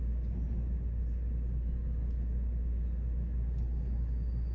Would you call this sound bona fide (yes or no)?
yes